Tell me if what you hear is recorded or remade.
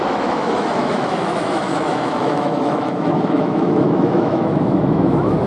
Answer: remade